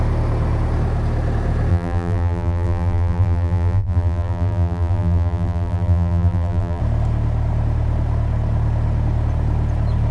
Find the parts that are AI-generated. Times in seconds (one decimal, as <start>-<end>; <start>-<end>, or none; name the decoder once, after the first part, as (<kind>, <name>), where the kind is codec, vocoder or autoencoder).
1.7-6.8 (vocoder, BigVGAN v2)